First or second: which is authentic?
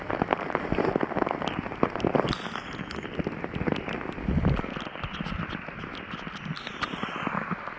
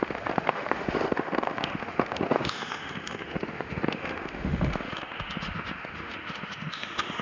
first